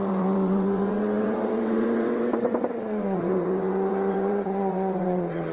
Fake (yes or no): yes